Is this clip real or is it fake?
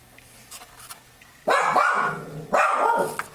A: real